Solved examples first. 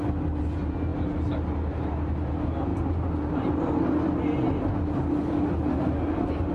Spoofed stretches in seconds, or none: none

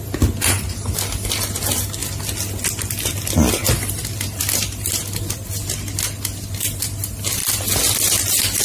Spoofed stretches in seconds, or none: none

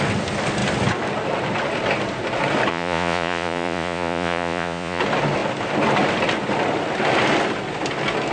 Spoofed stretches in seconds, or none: 2.7-5.0 (vocoder, Vocos)

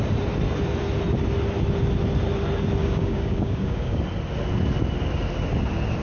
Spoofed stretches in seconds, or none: 2.8-4.0 (codec, DAC)

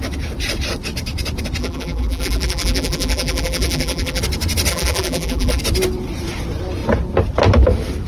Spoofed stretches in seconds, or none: 1.6-4.2 (vocoder, BigVGAN v2); 4.7-5.6

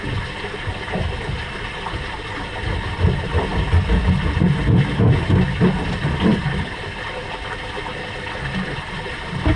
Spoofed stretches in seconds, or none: none